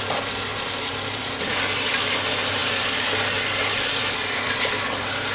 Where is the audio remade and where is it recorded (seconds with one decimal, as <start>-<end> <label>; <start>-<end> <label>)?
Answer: 0.0-0.5 recorded; 0.5-1.2 remade; 1.2-5.3 recorded